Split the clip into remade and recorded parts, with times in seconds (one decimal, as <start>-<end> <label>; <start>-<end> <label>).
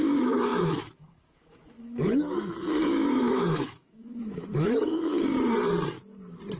0.0-5.3 remade; 5.3-6.6 recorded